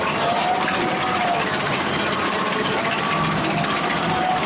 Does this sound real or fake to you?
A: real